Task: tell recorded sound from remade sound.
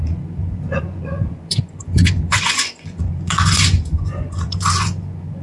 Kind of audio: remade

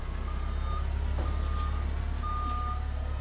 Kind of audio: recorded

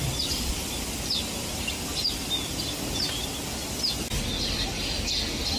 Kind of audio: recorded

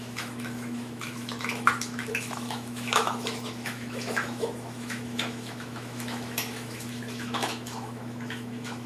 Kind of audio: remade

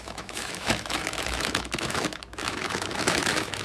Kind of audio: remade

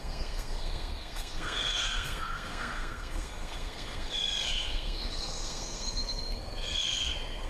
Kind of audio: remade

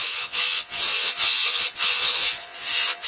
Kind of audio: remade